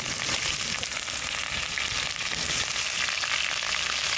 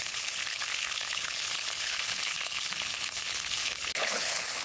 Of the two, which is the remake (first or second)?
second